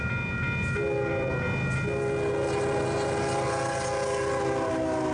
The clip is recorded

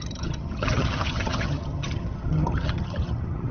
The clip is remade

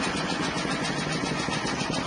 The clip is remade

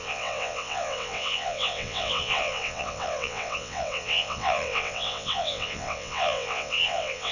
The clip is remade